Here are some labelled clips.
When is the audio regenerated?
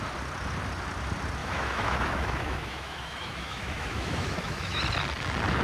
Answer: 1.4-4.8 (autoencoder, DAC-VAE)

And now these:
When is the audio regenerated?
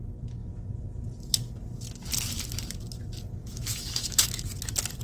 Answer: 3.4-4.5 (autoencoder, DAC-VAE)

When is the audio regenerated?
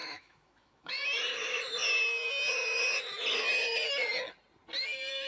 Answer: 0.0-0.9 (autoencoder, DAC-VAE)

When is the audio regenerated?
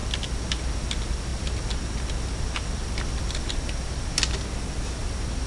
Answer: none